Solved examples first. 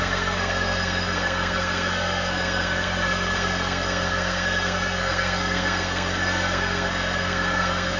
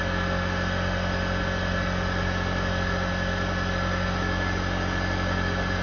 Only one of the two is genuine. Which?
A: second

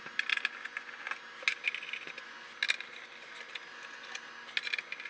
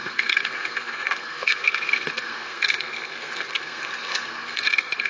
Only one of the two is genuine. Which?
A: first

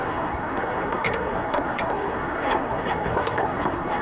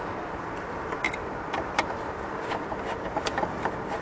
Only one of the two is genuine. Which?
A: second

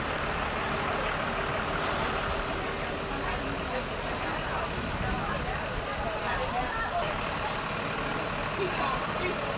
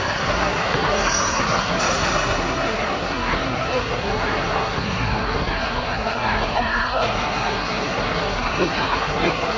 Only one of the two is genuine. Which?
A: first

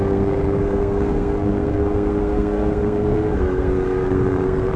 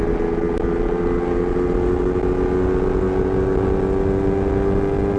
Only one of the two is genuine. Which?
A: second